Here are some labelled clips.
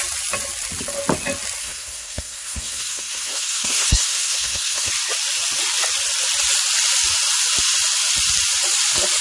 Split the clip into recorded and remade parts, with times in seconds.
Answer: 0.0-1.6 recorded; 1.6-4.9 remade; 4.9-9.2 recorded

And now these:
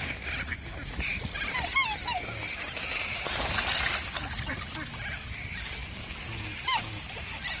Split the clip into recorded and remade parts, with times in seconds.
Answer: 0.0-7.6 recorded

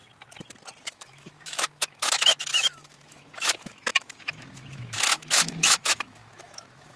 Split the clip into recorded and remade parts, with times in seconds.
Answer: 0.0-0.8 recorded; 0.8-7.0 remade

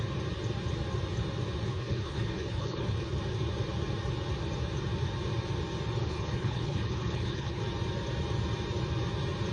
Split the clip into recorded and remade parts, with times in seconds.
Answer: 0.0-1.7 recorded; 1.7-3.2 remade; 3.2-6.0 recorded; 6.0-7.6 remade; 7.6-9.5 recorded